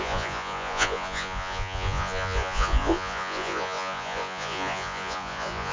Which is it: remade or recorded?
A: remade